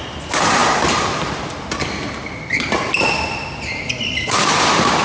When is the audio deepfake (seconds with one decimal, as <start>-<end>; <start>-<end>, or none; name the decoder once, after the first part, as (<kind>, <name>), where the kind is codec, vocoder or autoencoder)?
none